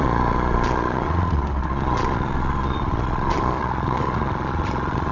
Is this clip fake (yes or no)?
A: yes